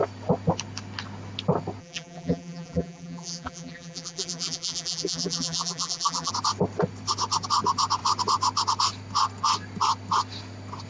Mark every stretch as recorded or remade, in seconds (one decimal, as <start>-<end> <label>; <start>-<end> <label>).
0.0-1.8 recorded; 1.8-6.3 remade; 6.3-10.9 recorded